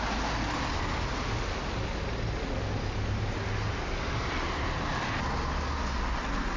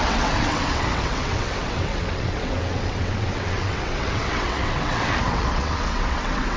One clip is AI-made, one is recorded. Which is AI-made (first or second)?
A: second